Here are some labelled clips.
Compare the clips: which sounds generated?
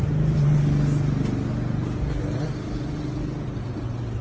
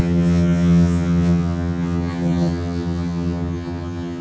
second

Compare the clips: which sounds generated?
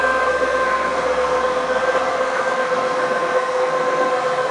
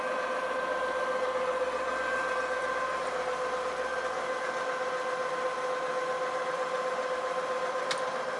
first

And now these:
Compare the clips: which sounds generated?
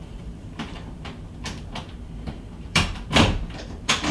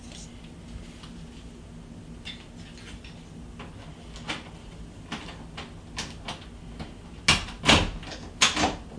first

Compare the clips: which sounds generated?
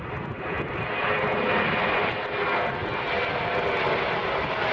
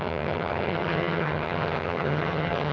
second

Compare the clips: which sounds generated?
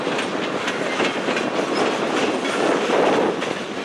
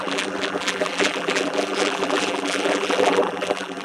second